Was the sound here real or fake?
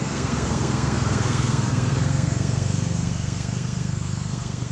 fake